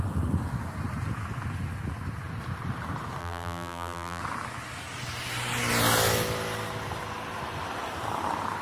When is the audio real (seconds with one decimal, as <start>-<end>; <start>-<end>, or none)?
0.0-3.2; 4.2-8.6